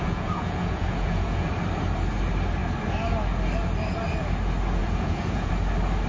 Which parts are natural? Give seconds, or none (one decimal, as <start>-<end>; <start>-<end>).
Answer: 1.5-4.8; 5.5-6.1